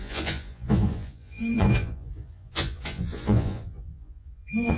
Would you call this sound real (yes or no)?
no